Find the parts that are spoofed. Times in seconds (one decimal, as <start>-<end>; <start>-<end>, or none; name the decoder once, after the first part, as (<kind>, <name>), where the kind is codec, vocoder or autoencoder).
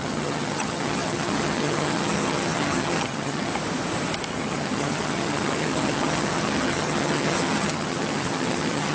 0.0-3.5 (vocoder, HiFi-GAN); 4.3-8.9